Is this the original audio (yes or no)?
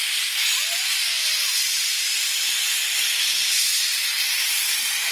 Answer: yes